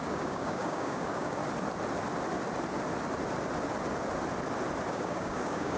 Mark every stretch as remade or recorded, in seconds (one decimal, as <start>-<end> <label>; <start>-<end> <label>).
0.0-1.4 remade; 1.4-4.9 recorded; 4.9-5.8 remade